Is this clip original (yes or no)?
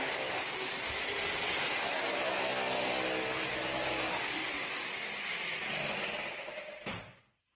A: yes